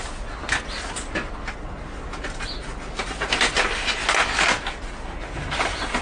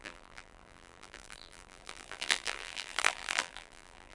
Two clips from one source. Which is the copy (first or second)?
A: second